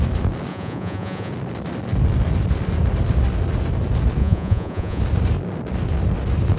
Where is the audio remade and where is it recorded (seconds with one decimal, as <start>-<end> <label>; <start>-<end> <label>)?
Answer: 0.0-0.5 recorded; 0.5-1.3 remade; 1.3-4.2 recorded; 4.2-5.0 remade; 5.0-6.6 recorded